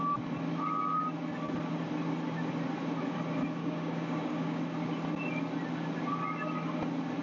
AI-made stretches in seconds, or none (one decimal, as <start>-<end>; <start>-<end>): 3.6-4.6